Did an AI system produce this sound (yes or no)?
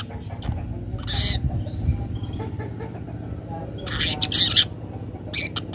no